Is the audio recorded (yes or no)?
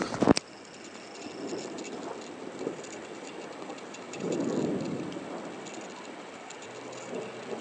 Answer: yes